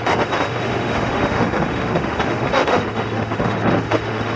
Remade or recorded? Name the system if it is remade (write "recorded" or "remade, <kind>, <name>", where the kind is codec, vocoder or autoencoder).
remade, autoencoder, DAC-VAE